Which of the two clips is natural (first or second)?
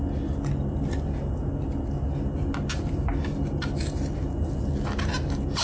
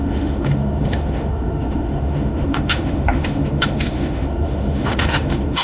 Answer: first